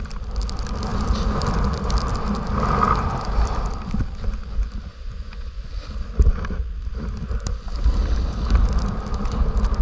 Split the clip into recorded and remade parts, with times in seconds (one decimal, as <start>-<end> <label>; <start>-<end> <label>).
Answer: 0.0-4.9 recorded; 4.9-5.7 remade; 5.7-9.8 recorded

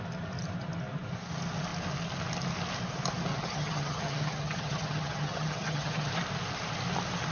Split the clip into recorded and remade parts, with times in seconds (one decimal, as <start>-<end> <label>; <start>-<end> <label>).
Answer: 0.0-3.3 recorded; 3.3-6.1 remade; 6.1-7.3 recorded

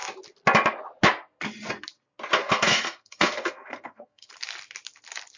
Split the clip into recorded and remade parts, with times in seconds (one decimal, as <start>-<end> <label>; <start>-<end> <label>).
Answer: 0.0-2.4 recorded; 2.4-4.3 remade; 4.3-5.4 recorded

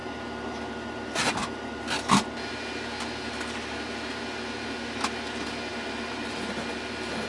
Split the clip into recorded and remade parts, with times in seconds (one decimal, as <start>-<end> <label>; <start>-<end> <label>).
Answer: 0.0-5.7 recorded; 5.7-6.6 remade; 6.6-7.3 recorded